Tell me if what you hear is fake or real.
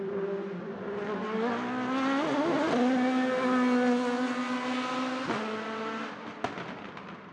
real